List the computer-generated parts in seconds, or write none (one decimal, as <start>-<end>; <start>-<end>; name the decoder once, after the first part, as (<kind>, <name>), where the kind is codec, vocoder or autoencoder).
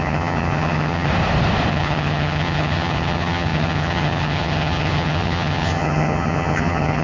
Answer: 0.0-1.1 (vocoder, HiFi-GAN); 1.7-7.0